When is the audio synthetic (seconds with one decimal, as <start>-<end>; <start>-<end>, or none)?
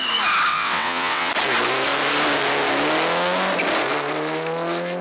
0.5-1.3